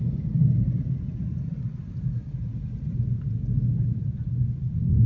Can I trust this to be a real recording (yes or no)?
yes